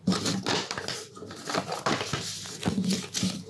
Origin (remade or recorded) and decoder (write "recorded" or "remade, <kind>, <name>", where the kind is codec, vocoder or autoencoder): recorded